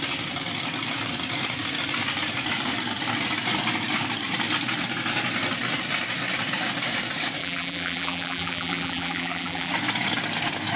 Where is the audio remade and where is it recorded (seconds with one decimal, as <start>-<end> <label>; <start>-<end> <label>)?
0.0-7.4 recorded; 7.4-9.7 remade; 9.7-10.8 recorded